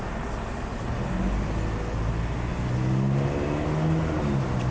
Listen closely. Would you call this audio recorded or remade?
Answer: recorded